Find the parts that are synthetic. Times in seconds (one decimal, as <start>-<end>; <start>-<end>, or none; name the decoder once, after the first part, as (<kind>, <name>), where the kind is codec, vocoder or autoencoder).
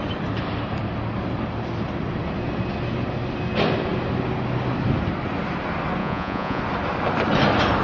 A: 6.0-6.6 (vocoder, Vocos)